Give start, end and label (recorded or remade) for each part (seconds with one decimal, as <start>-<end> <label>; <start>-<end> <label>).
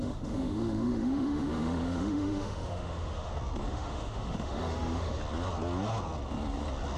0.0-3.3 remade; 3.3-3.7 recorded; 3.7-5.2 remade; 5.2-7.0 recorded